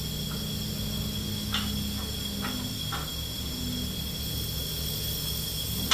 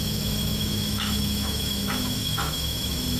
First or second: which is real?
first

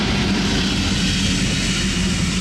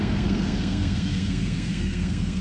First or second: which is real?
first